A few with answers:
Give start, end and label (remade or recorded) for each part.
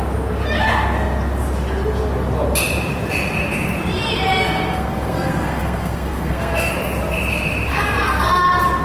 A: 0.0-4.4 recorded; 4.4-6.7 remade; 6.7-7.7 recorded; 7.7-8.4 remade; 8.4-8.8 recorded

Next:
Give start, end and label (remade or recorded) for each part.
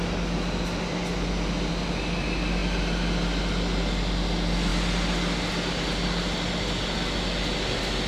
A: 0.0-8.1 recorded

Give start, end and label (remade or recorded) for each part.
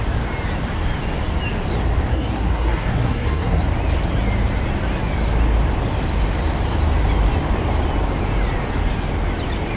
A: 0.0-2.1 recorded; 2.1-3.6 remade; 3.6-9.8 recorded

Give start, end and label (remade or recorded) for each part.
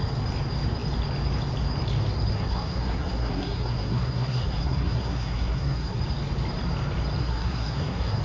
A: 0.0-2.3 recorded; 2.3-6.0 remade; 6.0-7.2 recorded; 7.2-8.2 remade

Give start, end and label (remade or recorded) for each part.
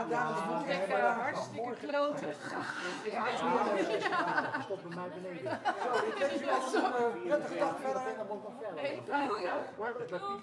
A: 0.0-1.9 recorded; 1.9-3.4 remade; 3.4-8.9 recorded; 8.9-10.0 remade; 10.0-10.4 recorded